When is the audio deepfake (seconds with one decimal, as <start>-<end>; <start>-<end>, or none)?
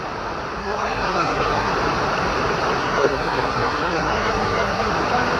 0.6-1.7; 2.8-4.9